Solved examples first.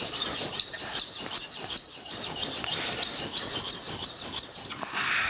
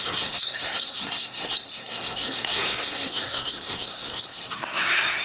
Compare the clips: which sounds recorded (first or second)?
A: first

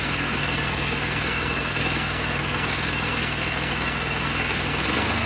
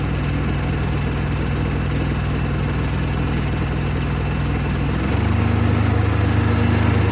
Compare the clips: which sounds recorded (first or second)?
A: second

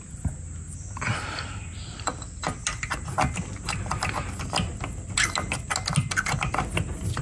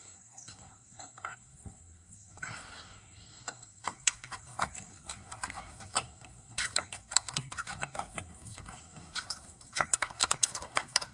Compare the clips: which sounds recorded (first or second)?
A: first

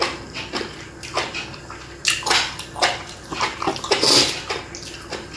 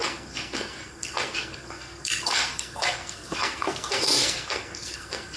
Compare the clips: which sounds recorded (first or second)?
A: first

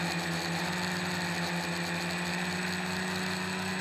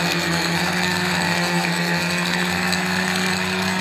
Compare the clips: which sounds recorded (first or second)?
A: first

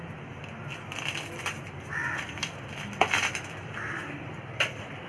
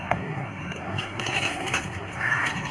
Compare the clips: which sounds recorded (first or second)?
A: first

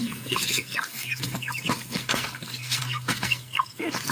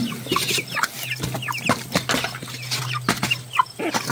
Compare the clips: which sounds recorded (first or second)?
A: second